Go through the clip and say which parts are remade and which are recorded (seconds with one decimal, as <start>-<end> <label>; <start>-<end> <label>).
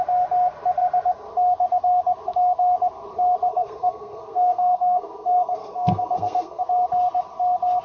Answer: 0.0-3.5 recorded; 3.5-6.6 remade; 6.6-7.8 recorded